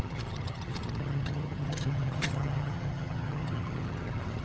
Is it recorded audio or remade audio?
remade